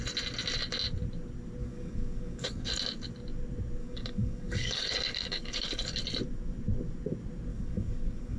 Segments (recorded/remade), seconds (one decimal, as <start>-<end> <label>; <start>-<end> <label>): 0.0-1.6 recorded; 1.6-2.7 remade; 2.7-3.8 recorded; 3.8-6.0 remade; 6.0-7.5 recorded; 7.5-8.4 remade